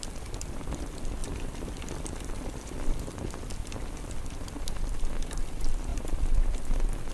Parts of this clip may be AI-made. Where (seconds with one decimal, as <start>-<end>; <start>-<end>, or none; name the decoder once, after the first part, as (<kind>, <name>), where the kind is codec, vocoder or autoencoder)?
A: 1.2-3.0 (vocoder, BigVGAN v2); 3.6-4.2; 5.9-6.6